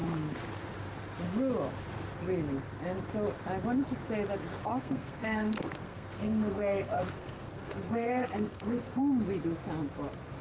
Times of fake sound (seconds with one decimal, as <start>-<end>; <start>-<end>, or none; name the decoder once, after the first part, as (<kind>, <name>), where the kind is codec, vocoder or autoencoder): 4.6-9.0 (codec, SNAC)